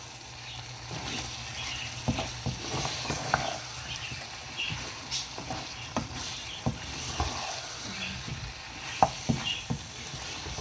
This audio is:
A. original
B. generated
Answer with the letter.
A